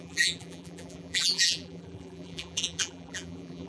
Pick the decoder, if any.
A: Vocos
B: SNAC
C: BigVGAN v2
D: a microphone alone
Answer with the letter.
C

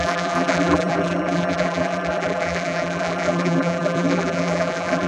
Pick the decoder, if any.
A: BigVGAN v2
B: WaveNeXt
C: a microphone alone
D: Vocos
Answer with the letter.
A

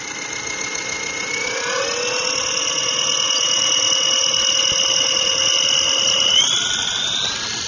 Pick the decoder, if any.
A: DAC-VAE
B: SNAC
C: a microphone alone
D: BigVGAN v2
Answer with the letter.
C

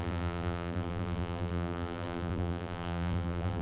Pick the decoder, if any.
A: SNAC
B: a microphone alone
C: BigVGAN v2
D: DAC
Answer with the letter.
C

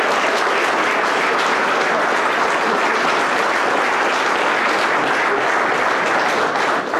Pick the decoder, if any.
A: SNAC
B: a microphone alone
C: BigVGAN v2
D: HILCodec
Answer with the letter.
B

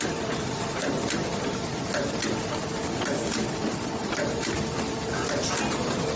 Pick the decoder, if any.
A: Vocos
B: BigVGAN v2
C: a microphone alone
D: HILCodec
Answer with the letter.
B